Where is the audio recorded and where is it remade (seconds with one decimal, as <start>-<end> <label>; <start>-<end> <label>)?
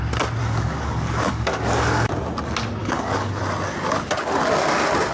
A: 0.0-0.4 recorded; 0.4-2.1 remade; 2.1-2.8 recorded; 2.8-3.4 remade; 3.4-5.1 recorded